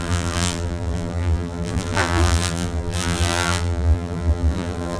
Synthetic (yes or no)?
yes